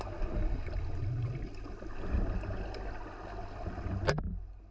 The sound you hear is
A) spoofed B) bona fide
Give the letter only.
B